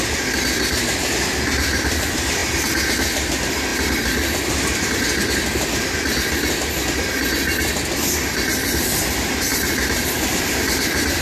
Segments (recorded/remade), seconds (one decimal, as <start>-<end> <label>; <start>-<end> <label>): 0.0-2.4 remade; 2.4-2.9 recorded; 2.9-11.2 remade